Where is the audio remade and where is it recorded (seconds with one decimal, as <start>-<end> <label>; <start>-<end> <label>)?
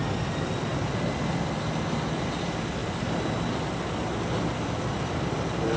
0.0-5.8 recorded